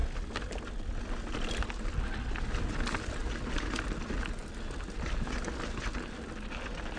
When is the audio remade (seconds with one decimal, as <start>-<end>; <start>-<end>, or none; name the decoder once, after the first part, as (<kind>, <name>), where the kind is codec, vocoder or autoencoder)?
none